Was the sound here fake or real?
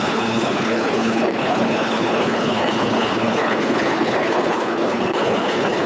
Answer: fake